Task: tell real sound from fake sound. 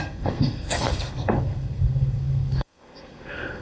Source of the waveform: fake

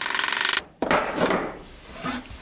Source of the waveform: real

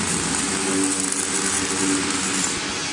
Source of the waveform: real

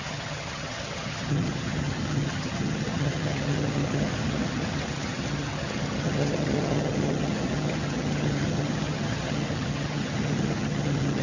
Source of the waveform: fake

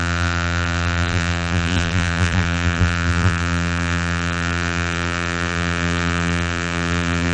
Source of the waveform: fake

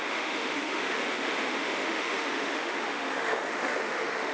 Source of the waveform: fake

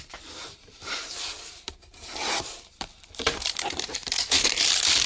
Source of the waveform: fake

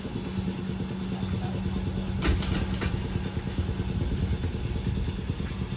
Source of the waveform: real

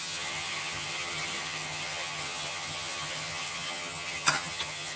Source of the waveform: fake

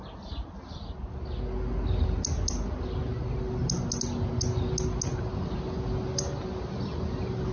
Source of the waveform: real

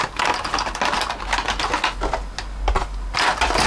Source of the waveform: real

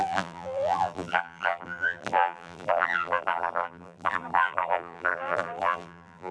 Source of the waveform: fake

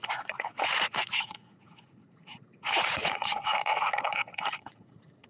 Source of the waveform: fake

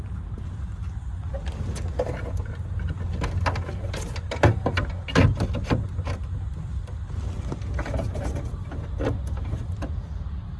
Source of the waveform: real